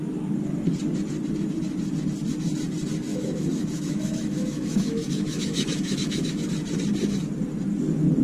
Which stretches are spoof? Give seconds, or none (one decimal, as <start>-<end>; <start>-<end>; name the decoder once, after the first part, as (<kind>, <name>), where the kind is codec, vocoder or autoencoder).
3.1-6.4 (autoencoder, DAC-VAE)